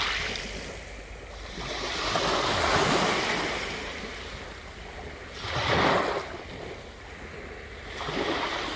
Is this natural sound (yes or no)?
yes